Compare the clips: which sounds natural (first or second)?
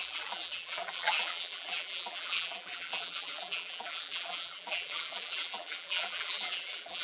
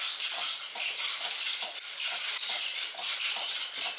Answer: second